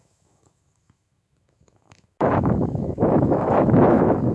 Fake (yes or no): yes